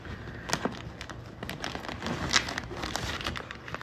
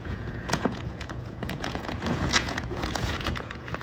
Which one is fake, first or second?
second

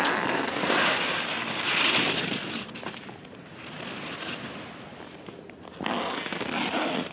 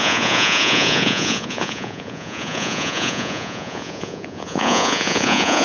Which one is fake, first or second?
second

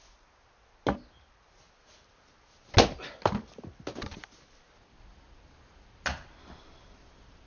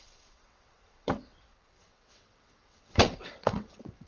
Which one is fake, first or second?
second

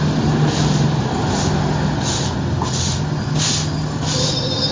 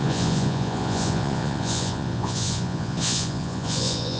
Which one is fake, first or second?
second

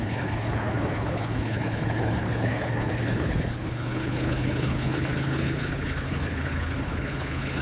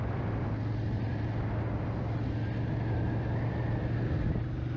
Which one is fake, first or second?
first